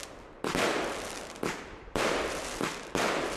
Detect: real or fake real